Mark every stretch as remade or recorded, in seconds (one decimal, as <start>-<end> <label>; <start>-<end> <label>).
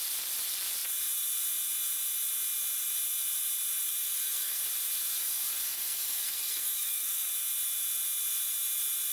0.0-4.0 recorded; 4.0-4.6 remade; 4.6-5.2 recorded; 5.2-7.3 remade; 7.3-9.1 recorded